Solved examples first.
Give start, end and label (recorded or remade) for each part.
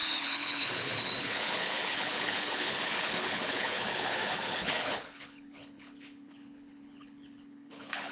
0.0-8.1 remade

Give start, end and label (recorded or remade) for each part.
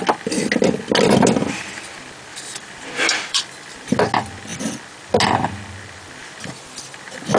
0.0-2.3 recorded; 2.3-3.4 remade; 3.4-7.4 recorded